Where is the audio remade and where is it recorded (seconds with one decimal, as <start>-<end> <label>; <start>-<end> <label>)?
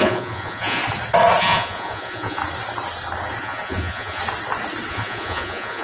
0.0-0.8 remade; 0.8-1.4 recorded; 1.4-2.4 remade; 2.4-3.4 recorded; 3.4-4.2 remade; 4.2-4.9 recorded; 4.9-5.8 remade